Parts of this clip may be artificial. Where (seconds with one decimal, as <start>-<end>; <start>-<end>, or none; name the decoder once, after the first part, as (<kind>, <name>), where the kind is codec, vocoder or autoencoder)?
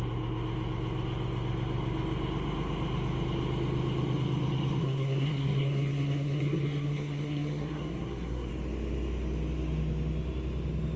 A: 4.8-8.5 (codec, SNAC)